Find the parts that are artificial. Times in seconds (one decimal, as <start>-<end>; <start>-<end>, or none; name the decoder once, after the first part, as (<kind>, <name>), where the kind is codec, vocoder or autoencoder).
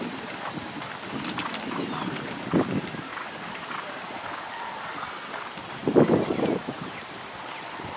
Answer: 3.1-4.0 (vocoder, BigVGAN v2)